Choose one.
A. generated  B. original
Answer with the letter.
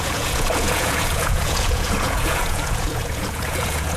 A